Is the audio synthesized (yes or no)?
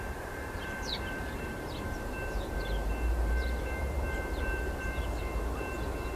yes